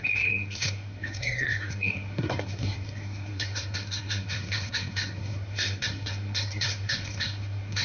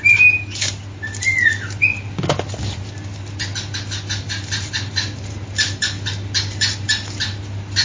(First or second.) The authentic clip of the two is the second